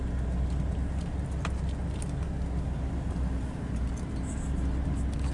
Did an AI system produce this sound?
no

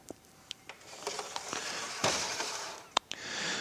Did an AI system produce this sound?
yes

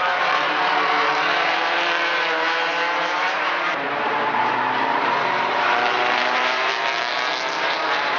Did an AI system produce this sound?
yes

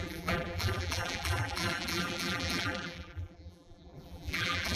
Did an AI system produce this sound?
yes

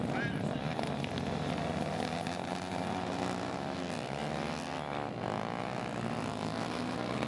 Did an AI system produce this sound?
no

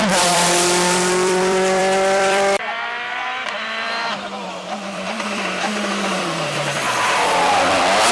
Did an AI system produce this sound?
yes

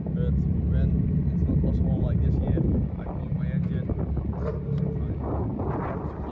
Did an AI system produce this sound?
no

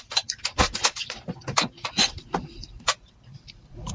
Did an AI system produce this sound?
yes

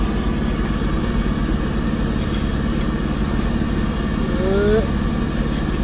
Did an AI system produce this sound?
no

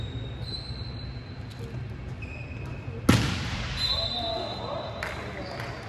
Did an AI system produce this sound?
no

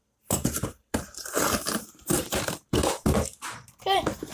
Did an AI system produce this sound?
yes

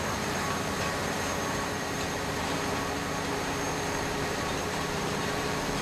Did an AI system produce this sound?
yes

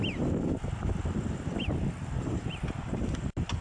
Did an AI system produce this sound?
no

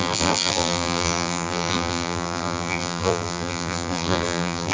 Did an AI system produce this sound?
yes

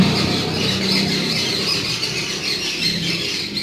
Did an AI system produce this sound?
yes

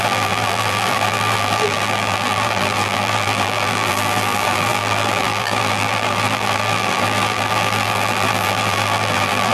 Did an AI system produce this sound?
yes